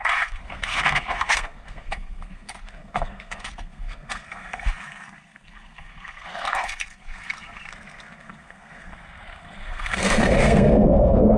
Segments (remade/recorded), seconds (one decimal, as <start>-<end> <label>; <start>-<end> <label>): 0.0-11.4 remade